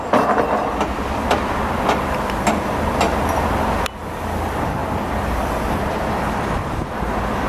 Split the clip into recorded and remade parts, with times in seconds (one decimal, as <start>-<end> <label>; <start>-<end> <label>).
0.0-7.5 recorded